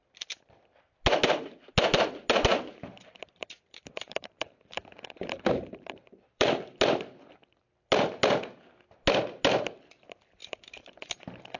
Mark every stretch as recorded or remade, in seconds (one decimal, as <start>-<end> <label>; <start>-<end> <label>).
0.0-2.5 recorded; 2.5-6.6 remade; 6.6-10.4 recorded; 10.4-11.6 remade